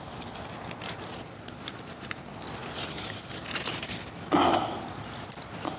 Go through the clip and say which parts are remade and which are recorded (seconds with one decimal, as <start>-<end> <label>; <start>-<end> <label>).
0.0-5.8 recorded